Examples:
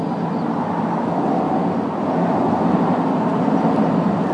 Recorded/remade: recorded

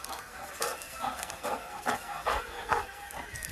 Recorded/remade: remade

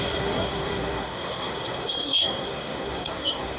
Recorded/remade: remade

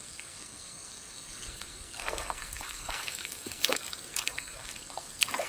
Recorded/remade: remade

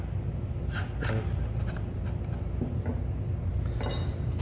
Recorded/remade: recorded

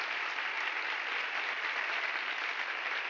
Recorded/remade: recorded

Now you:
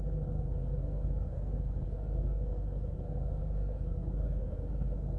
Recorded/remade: remade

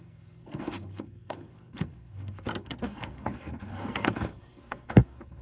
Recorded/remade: remade